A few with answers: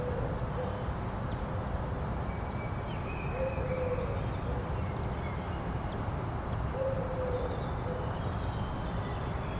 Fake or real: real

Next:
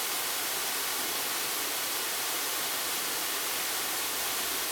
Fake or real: real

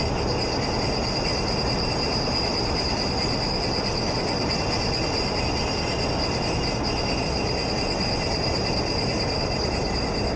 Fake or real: real